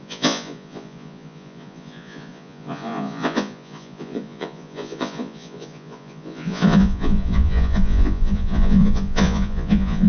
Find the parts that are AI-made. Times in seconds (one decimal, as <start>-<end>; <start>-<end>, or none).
0.0-10.1